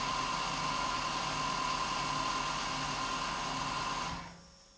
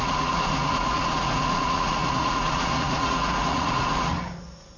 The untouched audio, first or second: first